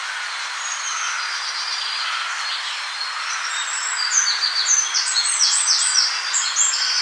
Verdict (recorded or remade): recorded